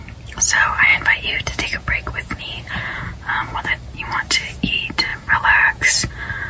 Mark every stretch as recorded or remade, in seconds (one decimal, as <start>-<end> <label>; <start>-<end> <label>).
0.0-0.9 recorded; 0.9-3.7 remade; 3.7-5.1 recorded; 5.1-6.1 remade; 6.1-6.5 recorded